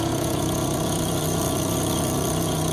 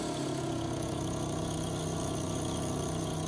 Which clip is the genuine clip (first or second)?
second